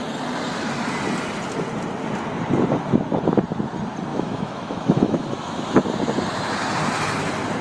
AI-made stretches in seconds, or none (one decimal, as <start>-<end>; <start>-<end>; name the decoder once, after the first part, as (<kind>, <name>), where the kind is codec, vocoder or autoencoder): 4.1-5.7 (autoencoder, DAC-VAE)